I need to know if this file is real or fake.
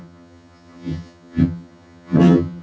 fake